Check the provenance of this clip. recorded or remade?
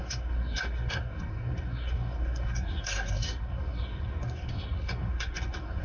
remade